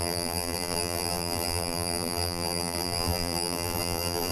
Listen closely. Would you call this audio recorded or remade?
remade